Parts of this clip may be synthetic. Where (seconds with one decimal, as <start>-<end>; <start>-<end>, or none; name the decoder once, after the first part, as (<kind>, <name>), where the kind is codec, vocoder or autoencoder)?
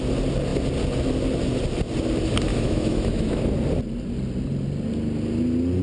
2.5-3.4 (autoencoder, DAC-VAE)